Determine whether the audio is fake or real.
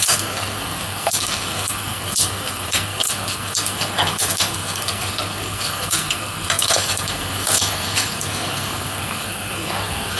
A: fake